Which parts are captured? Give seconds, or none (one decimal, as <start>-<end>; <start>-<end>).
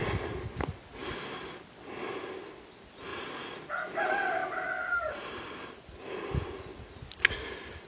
0.0-7.9